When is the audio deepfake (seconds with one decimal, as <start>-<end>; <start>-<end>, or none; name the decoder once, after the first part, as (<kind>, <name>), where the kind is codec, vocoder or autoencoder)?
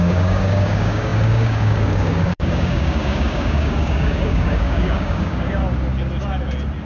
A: 0.0-5.6 (codec, DAC)